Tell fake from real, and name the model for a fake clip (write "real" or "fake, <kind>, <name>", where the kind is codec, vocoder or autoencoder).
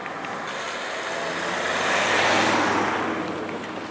real